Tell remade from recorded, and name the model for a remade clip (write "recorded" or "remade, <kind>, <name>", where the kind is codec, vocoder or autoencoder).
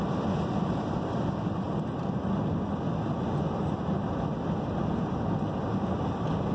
recorded